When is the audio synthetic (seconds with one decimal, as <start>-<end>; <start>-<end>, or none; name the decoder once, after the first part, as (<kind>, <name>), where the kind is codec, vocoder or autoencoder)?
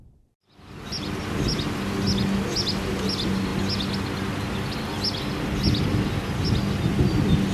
none